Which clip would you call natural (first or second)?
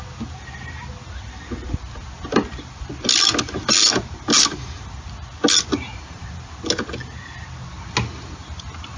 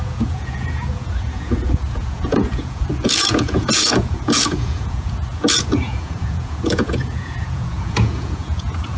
first